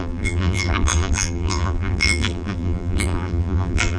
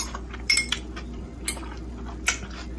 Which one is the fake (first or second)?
first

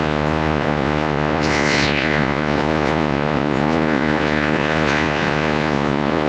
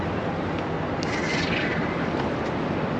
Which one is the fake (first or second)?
first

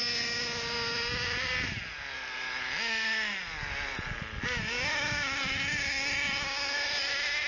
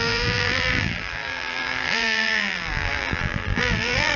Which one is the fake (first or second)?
second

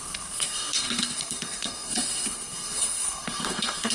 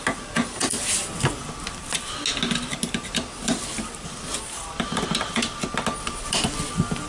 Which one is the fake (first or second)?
first